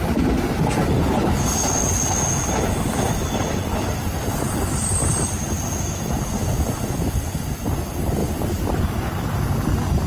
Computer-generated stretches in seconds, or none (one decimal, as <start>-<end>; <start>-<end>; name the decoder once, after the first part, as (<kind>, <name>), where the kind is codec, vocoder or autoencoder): 5.0-5.8 (vocoder, BigVGAN v2); 8.2-8.8